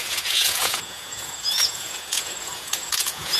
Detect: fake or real fake